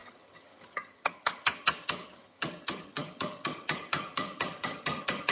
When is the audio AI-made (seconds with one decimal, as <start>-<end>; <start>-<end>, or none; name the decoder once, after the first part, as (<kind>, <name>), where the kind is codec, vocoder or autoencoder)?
0.0-5.3 (vocoder, HiFi-GAN)